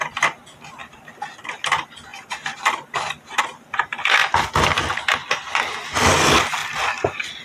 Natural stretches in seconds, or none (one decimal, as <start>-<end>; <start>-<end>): 0.0-7.4